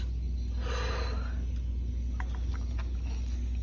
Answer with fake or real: real